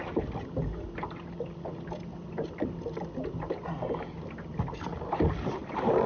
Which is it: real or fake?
real